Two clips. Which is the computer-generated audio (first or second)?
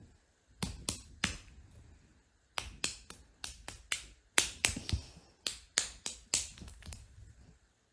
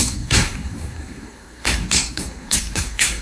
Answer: second